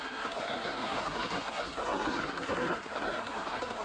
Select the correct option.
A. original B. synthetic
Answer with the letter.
B